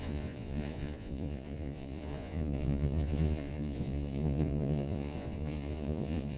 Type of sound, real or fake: fake